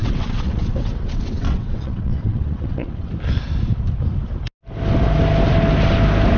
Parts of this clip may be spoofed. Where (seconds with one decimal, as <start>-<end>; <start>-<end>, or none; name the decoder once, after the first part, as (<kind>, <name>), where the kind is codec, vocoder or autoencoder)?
0.0-3.1 (vocoder, WaveNeXt)